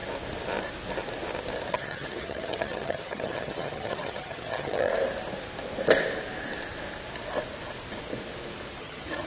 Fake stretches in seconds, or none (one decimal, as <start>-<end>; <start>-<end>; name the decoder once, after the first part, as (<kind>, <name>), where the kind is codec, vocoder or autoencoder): 1.7-4.9 (vocoder, HiFi-GAN); 8.8-9.3

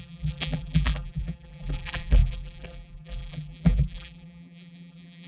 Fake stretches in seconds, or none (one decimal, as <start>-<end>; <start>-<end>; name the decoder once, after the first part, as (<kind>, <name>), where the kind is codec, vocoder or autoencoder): 0.0-5.3 (vocoder, BigVGAN v2)

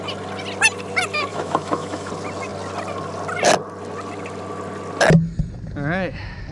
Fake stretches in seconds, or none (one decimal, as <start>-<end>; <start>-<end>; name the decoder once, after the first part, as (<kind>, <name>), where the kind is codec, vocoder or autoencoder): 1.3-2.1 (autoencoder, DAC-VAE)

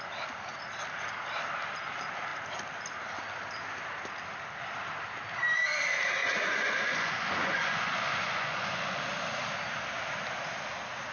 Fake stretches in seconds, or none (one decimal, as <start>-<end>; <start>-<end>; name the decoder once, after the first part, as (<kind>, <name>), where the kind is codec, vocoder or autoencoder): 6.2-9.0 (vocoder, Vocos)

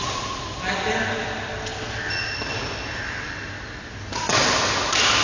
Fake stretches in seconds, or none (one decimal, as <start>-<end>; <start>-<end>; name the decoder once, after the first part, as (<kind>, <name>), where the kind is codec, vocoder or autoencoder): none

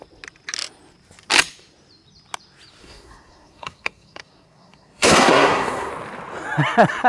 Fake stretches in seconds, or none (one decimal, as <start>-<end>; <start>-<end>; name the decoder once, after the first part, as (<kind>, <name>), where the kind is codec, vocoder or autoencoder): 2.8-5.9 (codec, SNAC)

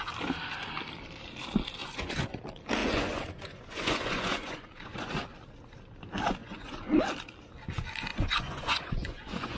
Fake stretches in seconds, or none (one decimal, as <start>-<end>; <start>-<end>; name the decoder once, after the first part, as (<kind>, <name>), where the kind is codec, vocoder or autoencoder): 1.8-2.4 (vocoder, Vocos); 2.8-5.1; 6.4-7.0; 8.1-9.6